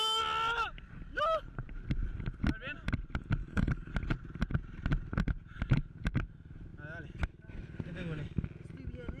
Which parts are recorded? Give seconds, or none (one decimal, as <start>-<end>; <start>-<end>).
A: 0.0-3.4; 3.9-9.2